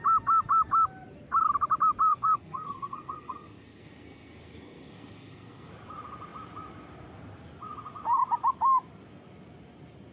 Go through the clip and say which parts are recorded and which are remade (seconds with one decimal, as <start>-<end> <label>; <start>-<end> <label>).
0.0-2.1 recorded; 2.1-5.7 remade; 5.7-10.1 recorded